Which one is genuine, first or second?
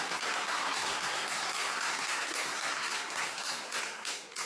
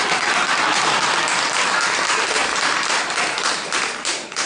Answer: second